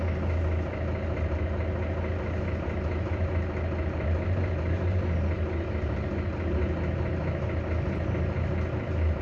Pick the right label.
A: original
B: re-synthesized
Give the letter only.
A